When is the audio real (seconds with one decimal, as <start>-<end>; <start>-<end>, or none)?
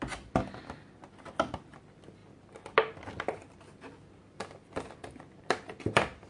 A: 0.0-6.3